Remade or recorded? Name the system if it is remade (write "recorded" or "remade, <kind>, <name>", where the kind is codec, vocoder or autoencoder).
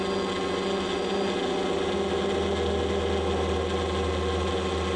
recorded